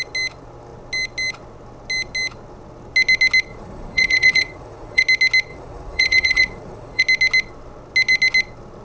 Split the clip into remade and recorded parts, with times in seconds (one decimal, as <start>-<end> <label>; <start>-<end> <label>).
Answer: 0.0-3.5 recorded; 3.5-5.0 remade; 5.0-5.5 recorded; 5.5-7.0 remade; 7.0-8.8 recorded